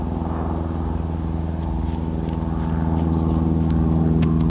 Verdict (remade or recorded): recorded